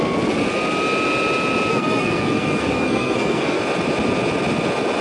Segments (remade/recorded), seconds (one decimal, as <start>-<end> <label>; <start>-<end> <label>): 0.0-1.7 recorded; 1.7-3.6 remade; 3.6-5.0 recorded